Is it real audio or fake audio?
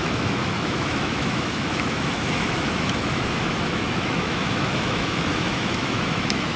fake